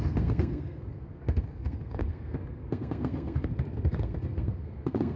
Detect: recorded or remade remade